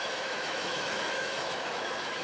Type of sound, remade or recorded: remade